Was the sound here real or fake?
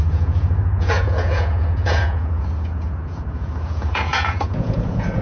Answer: fake